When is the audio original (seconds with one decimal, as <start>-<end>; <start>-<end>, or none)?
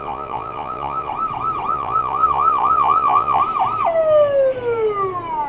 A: 1.1-1.7; 3.4-5.5